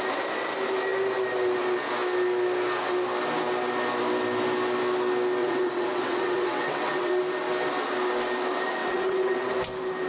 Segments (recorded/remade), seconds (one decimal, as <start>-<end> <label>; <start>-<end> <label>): 0.0-5.4 recorded; 5.4-7.1 remade; 7.1-8.8 recorded; 8.8-9.5 remade; 9.5-10.1 recorded